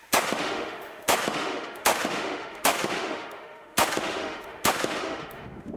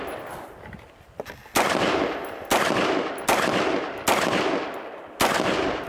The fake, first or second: first